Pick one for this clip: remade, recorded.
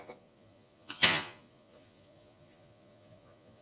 remade